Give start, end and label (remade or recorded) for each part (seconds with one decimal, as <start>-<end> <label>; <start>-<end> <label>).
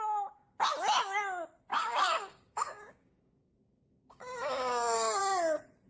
0.0-1.7 recorded; 1.7-5.2 remade; 5.2-5.9 recorded